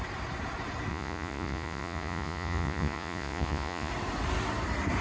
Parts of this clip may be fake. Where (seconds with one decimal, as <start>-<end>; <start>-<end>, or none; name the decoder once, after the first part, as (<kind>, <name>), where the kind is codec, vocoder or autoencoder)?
0.9-3.9 (vocoder, Vocos)